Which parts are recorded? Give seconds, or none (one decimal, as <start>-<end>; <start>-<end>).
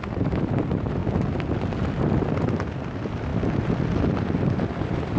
1.0-2.0; 3.3-4.6